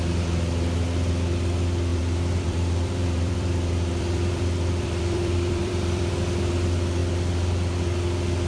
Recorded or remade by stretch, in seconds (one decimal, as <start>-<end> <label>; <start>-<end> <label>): 0.0-1.9 recorded; 1.9-6.1 remade; 6.1-8.5 recorded